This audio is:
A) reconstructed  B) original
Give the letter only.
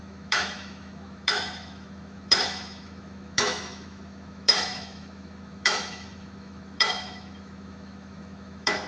A